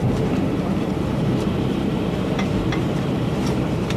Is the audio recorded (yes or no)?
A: no